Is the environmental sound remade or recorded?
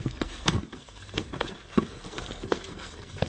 remade